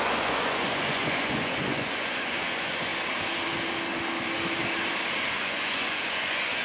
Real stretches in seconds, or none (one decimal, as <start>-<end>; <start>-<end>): 2.9-5.3

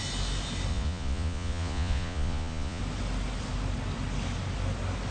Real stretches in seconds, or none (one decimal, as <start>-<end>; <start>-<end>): 0.0-0.7; 2.8-5.1

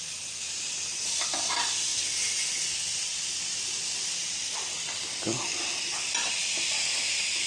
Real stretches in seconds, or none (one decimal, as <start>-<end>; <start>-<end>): 0.0-7.5

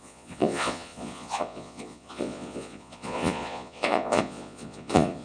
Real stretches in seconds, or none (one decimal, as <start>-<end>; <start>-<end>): none

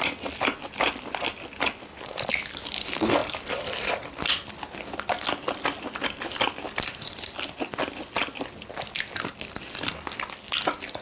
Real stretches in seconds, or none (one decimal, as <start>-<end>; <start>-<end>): 0.0-11.0

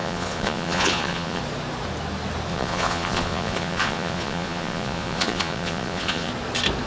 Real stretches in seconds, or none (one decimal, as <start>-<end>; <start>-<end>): 1.4-2.5; 6.3-6.9

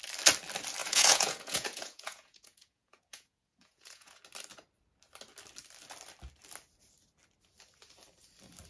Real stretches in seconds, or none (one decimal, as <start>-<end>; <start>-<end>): 0.0-0.8; 4.2-8.7